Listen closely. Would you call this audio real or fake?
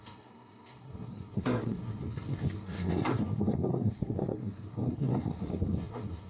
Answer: fake